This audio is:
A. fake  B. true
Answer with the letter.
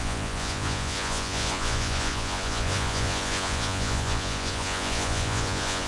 A